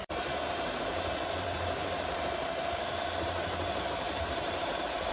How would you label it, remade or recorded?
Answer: remade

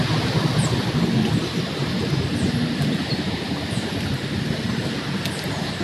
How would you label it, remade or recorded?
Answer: recorded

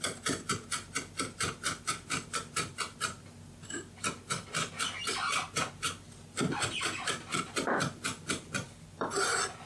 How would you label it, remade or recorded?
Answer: remade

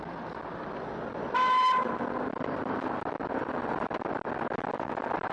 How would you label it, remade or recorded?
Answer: recorded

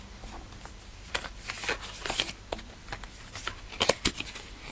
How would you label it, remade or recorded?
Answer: remade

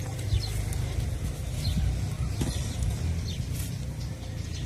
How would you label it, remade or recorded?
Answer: recorded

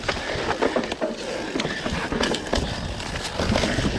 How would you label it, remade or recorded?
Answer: recorded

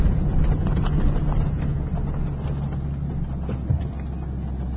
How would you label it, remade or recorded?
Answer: recorded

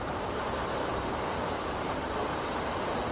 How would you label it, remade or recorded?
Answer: remade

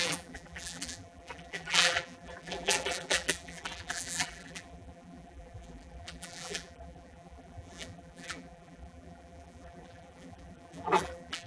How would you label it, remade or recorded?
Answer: remade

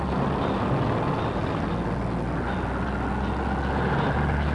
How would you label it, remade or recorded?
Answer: recorded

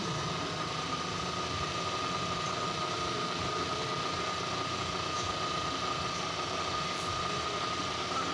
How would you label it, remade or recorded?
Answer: remade